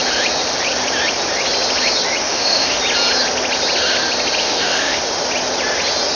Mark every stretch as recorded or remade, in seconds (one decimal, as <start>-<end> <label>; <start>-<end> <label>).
0.0-2.2 recorded; 2.2-2.8 remade; 2.8-4.4 recorded; 4.4-5.0 remade; 5.0-6.2 recorded